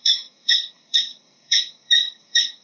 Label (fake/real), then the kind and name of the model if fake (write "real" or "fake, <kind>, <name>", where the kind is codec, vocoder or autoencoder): fake, codec, SNAC